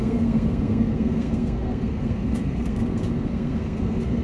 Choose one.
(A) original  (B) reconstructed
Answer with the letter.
B